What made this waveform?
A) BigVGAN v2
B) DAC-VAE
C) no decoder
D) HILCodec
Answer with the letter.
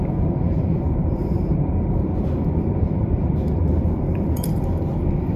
A